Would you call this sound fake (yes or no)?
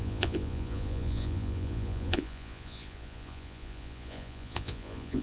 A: yes